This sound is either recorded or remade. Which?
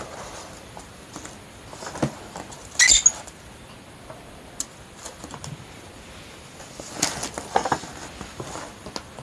recorded